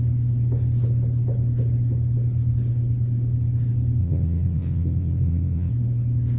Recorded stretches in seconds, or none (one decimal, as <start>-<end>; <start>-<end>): 0.0-4.0; 5.7-6.4